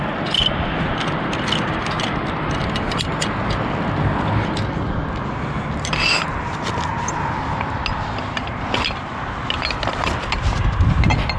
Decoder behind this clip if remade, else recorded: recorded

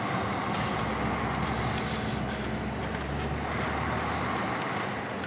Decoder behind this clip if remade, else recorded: recorded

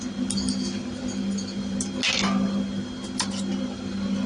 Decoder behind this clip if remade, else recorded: recorded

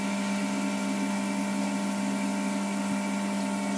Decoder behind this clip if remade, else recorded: recorded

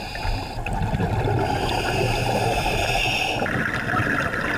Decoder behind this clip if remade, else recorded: recorded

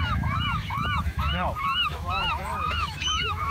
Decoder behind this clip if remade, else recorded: remade, autoencoder, DAC-VAE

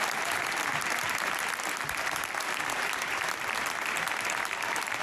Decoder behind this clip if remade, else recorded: recorded